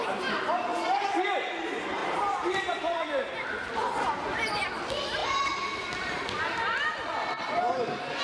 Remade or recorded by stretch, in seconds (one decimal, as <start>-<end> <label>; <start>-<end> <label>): 0.0-2.0 recorded; 2.0-3.3 remade; 3.3-5.2 recorded; 5.2-8.2 remade